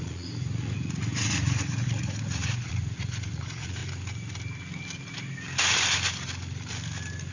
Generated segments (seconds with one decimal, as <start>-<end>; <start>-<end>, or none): 0.0-3.8